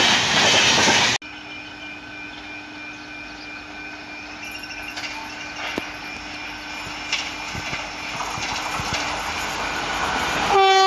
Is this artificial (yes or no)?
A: no